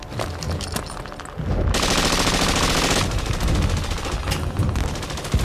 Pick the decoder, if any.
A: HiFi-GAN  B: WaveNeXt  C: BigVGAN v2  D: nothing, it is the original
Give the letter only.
D